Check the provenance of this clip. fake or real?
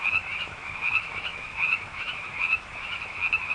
fake